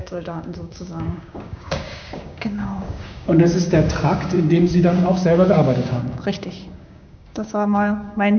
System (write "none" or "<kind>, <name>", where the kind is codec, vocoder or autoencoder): codec, DAC